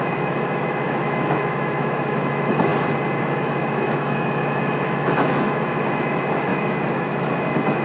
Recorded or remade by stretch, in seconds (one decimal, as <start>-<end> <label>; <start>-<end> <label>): 0.0-2.7 remade; 2.7-3.2 recorded; 3.2-7.8 remade